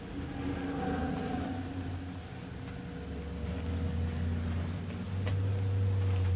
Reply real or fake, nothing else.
real